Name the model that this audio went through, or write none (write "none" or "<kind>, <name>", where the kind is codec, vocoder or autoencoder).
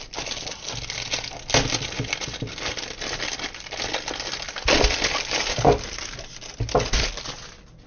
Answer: none